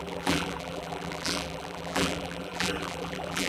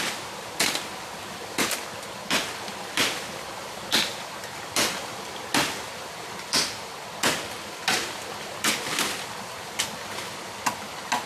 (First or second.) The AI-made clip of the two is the first